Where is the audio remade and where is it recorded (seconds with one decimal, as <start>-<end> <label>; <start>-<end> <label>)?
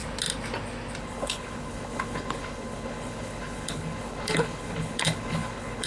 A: 0.0-1.0 recorded; 1.0-5.9 remade